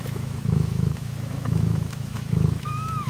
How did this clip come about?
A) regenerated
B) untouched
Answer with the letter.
A